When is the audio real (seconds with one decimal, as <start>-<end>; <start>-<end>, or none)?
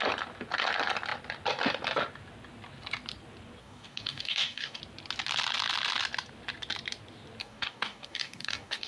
0.0-3.6; 4.8-7.4